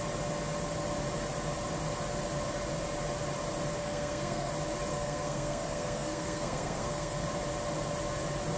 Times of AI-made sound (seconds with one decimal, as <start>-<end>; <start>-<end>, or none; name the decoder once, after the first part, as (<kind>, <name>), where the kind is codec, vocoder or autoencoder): 3.8-4.5 (codec, SNAC); 4.9-7.2